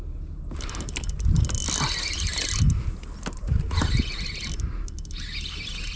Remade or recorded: recorded